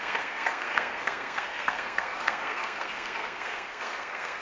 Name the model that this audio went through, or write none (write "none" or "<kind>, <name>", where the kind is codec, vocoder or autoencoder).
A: codec, SNAC